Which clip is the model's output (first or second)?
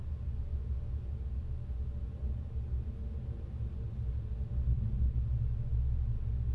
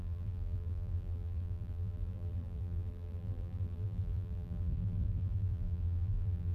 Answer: second